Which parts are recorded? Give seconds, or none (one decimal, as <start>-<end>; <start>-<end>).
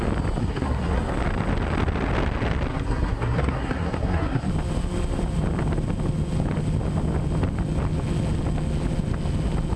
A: 0.0-0.4; 1.1-2.7; 4.5-9.8